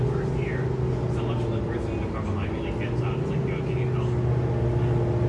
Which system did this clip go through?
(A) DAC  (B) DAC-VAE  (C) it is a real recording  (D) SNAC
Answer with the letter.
C